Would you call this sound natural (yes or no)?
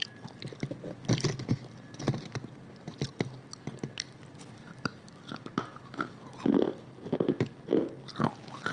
yes